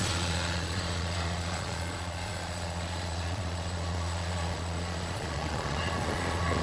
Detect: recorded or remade remade